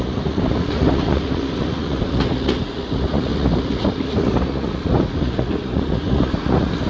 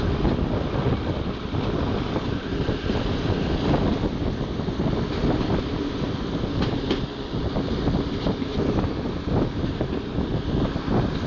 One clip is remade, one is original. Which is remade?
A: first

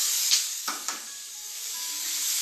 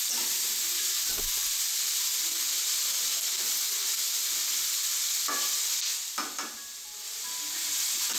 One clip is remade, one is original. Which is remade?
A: first